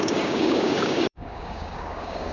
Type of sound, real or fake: fake